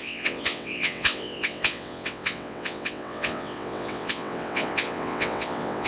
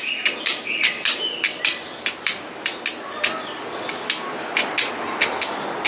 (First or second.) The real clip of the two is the second